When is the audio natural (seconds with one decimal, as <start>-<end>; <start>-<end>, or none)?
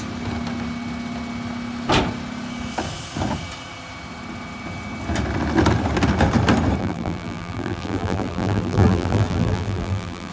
0.0-6.8